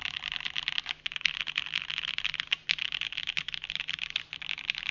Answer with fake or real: real